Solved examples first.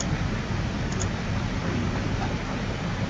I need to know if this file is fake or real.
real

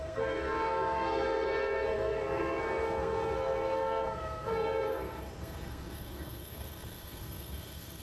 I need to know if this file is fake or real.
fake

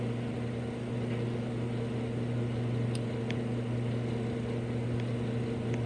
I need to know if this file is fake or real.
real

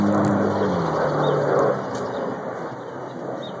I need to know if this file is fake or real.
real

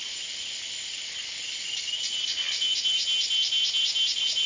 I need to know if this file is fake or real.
real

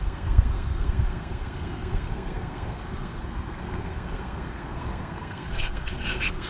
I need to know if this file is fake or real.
fake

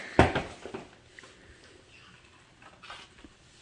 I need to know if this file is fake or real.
real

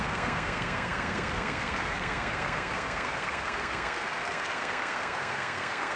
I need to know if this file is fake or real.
fake